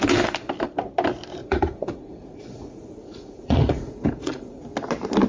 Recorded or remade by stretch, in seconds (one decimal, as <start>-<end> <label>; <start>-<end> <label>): 0.0-1.4 recorded; 1.4-4.6 remade; 4.6-5.3 recorded